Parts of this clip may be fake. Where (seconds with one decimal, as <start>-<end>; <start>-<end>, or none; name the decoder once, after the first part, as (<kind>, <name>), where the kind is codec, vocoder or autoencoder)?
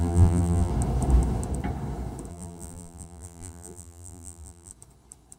0.0-0.7 (vocoder, BigVGAN v2); 2.3-4.7